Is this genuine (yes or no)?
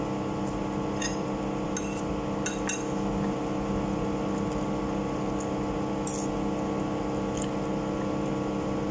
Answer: yes